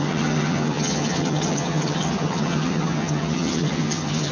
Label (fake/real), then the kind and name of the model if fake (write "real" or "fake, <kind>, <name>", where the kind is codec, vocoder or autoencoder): fake, vocoder, HiFi-GAN